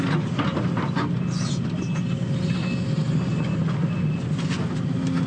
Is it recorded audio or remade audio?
recorded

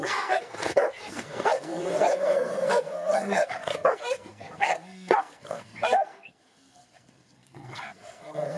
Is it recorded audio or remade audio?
remade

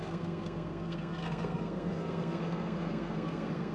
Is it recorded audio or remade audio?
remade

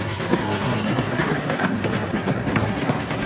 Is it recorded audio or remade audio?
remade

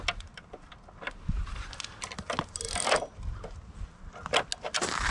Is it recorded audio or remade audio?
recorded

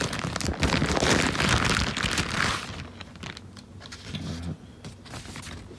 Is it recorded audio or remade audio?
recorded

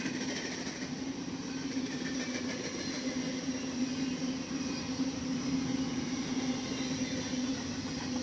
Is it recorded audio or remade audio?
recorded